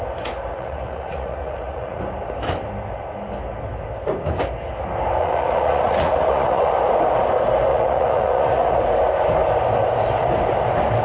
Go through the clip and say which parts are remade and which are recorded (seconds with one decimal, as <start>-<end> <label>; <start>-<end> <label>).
0.0-0.5 recorded; 0.5-2.0 remade; 2.0-5.2 recorded; 5.2-6.7 remade; 6.7-7.7 recorded; 7.7-8.8 remade; 8.8-11.0 recorded